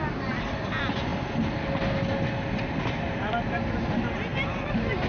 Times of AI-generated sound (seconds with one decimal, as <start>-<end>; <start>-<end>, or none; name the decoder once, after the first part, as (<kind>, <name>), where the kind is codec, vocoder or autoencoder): none